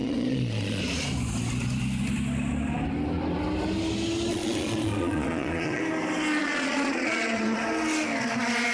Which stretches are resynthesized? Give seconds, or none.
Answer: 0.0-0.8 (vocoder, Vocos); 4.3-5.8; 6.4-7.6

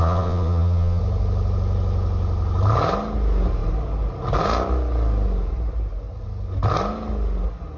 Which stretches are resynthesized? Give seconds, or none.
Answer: 0.0-1.0 (vocoder, Vocos)

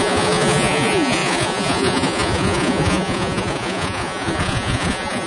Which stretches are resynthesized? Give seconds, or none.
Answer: 0.0-5.3 (vocoder, Vocos)

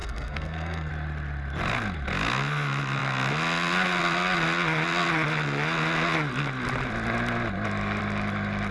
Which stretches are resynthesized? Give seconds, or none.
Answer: 0.0-0.9 (codec, SNAC)